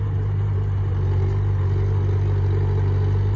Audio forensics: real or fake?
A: real